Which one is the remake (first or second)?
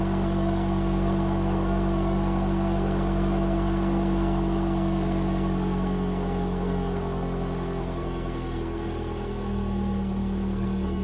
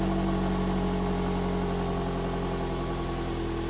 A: first